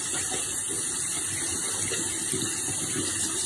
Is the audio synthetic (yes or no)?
no